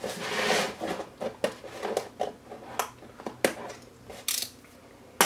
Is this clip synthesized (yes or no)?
no